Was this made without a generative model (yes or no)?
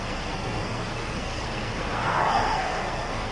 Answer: no